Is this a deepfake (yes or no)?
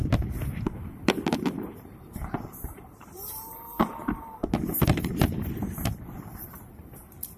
yes